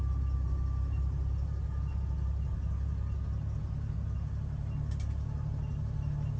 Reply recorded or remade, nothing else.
recorded